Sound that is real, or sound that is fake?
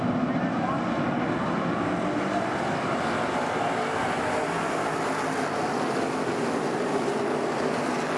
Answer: real